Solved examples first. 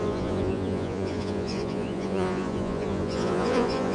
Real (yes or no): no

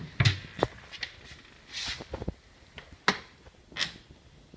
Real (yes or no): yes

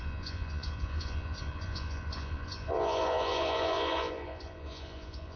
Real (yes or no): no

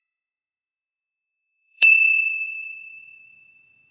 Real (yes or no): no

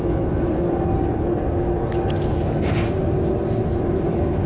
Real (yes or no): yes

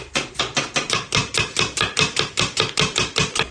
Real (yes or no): yes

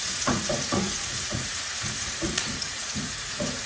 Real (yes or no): no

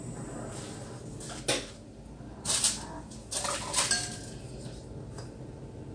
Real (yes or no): yes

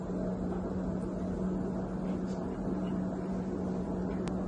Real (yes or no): yes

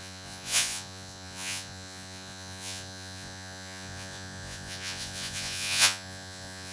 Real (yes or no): no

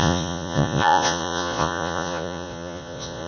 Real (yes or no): no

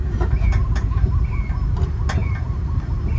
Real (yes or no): yes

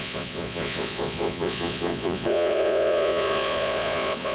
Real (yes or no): no